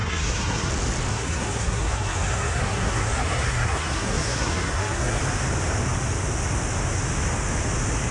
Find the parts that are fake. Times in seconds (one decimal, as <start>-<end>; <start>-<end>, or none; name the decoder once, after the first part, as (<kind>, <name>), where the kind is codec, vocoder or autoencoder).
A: 0.0-0.7 (codec, SNAC); 1.1-5.2